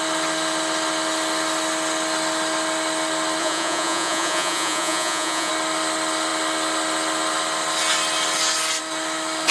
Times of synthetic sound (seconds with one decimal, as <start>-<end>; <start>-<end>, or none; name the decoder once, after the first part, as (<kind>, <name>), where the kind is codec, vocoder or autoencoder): 3.4-5.5 (vocoder, Vocos)